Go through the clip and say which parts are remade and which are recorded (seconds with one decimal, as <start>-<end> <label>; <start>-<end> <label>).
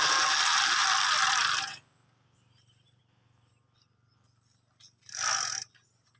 0.0-6.2 recorded